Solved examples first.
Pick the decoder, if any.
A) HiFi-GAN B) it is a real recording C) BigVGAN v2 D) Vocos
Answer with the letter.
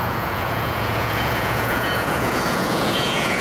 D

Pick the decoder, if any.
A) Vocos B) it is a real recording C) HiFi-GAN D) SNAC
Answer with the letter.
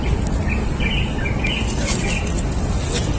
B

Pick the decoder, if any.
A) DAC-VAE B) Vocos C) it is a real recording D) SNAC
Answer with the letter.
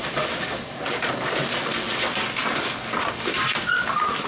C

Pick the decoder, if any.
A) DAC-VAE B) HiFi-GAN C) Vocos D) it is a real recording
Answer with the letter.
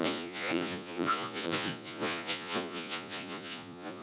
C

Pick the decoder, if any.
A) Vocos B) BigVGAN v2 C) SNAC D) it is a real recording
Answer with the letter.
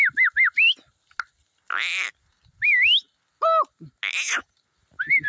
D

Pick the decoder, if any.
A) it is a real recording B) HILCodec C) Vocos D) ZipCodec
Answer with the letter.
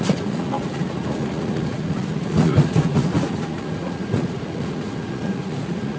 C